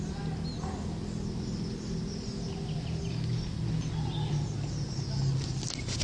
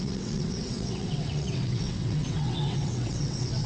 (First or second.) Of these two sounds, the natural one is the first